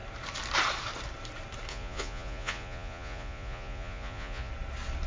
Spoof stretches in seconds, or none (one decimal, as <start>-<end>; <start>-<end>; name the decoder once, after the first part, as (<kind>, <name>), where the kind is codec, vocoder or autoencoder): 1.7-4.5 (vocoder, Vocos)